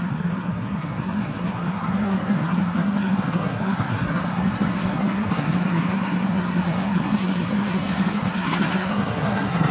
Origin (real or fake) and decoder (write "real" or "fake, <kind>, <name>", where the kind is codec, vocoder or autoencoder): fake, codec, SNAC